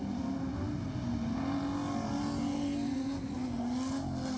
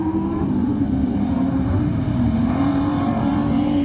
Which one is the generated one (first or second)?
second